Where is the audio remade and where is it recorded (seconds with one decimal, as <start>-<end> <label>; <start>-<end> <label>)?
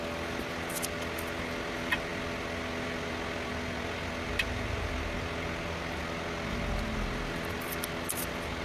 0.0-8.6 recorded